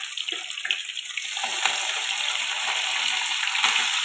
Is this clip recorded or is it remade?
recorded